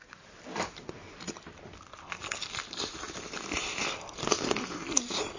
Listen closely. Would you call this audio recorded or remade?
remade